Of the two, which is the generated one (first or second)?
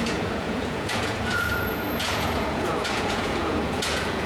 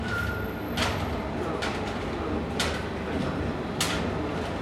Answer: first